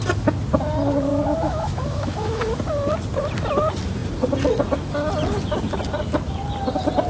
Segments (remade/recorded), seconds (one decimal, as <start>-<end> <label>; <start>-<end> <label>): 0.0-1.1 recorded; 1.1-2.4 remade; 2.4-7.1 recorded